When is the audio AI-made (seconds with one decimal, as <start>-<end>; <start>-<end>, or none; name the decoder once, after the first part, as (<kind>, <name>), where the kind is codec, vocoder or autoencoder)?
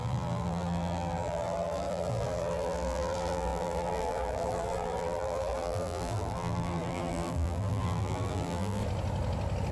0.0-8.8 (vocoder, BigVGAN v2)